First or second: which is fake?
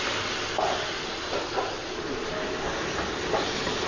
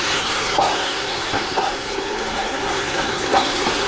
second